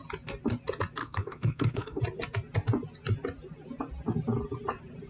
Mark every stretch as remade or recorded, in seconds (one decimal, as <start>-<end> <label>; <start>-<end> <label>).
0.0-1.0 recorded; 1.0-2.0 remade; 2.0-5.1 recorded